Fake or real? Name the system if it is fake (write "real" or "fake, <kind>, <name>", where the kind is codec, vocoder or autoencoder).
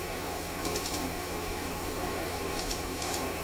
fake, codec, DAC